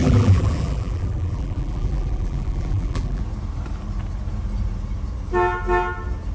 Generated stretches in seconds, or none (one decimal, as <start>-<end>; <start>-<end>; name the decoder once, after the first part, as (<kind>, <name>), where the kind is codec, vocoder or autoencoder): 0.0-3.2 (vocoder, BigVGAN v2)